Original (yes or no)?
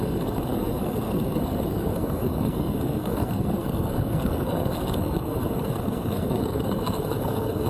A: no